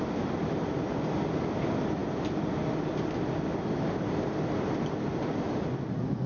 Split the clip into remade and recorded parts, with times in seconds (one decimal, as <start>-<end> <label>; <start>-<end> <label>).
0.0-6.3 recorded